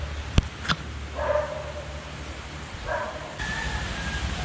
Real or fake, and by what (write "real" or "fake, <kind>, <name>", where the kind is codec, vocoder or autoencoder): real